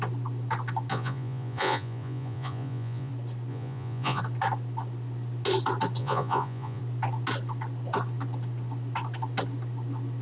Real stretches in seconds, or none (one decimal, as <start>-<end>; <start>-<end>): 0.0-0.9; 3.1-3.5; 4.2-6.0; 6.8-10.2